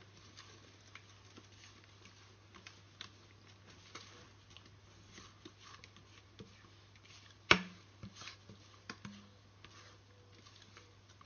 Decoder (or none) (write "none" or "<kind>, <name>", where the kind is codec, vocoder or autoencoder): none